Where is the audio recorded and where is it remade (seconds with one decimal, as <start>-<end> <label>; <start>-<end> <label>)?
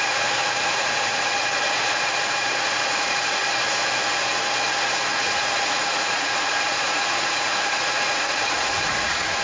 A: 0.0-3.4 remade; 3.4-4.8 recorded; 4.8-9.4 remade